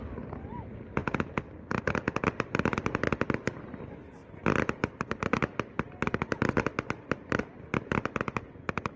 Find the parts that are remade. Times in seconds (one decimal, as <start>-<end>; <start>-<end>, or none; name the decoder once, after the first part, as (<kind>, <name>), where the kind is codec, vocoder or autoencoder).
none